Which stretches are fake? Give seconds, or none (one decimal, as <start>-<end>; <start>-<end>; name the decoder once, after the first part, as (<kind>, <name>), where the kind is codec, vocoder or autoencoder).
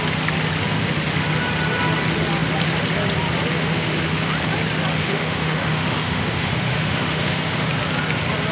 3.6-4.3 (autoencoder, DAC-VAE); 5.0-7.7